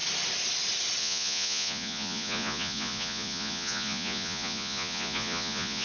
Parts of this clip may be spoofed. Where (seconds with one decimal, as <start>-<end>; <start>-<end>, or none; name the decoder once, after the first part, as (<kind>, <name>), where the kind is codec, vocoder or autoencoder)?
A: 1.0-5.8 (vocoder, Vocos)